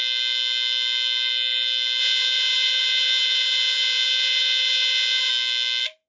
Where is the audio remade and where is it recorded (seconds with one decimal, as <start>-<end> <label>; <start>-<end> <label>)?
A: 0.0-2.0 recorded; 2.0-5.3 remade; 5.3-6.1 recorded

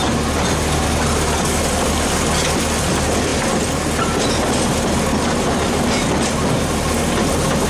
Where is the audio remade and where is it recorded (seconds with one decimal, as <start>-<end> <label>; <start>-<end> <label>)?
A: 0.0-7.7 recorded

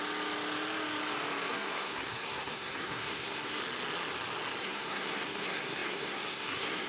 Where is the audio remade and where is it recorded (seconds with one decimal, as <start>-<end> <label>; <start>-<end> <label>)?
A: 0.0-1.5 recorded; 1.5-3.6 remade; 3.6-4.6 recorded; 4.6-6.9 remade

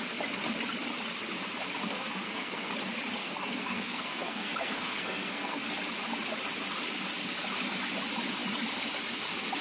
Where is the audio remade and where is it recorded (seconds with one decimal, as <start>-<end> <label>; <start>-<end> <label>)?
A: 0.0-1.8 recorded; 1.8-2.7 remade; 2.7-3.2 recorded; 3.2-5.7 remade; 5.7-9.6 recorded